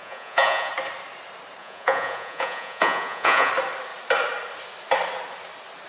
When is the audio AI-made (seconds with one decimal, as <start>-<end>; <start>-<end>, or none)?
0.0-0.7; 1.6-3.5